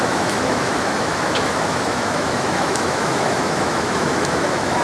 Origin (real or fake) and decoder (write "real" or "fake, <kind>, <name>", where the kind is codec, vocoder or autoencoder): fake, autoencoder, DAC-VAE